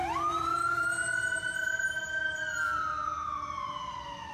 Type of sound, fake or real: fake